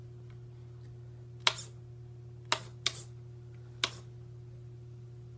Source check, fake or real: real